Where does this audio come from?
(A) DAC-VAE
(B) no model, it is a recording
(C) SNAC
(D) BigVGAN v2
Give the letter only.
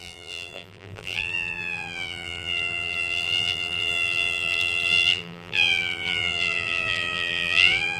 D